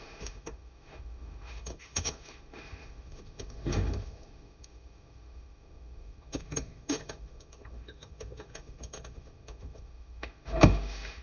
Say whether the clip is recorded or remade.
remade